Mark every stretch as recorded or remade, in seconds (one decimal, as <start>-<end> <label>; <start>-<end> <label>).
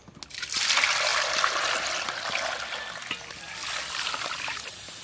0.0-5.0 recorded